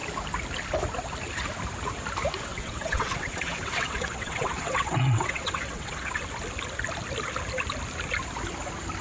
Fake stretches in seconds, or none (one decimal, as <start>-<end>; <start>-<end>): 2.5-6.2